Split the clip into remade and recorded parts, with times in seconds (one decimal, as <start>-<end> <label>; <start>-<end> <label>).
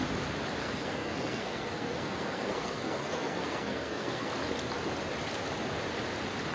0.0-0.6 recorded; 0.6-4.3 remade; 4.3-6.5 recorded